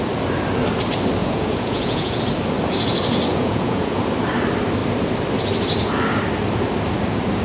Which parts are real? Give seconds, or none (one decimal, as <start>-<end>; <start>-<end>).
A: 0.0-1.2; 2.2-3.3; 4.1-7.4